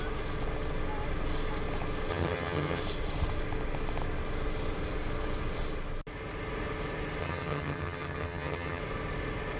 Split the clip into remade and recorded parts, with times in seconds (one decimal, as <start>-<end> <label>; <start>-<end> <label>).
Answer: 0.0-2.1 recorded; 2.1-2.8 remade; 2.8-7.2 recorded; 7.2-8.8 remade; 8.8-9.6 recorded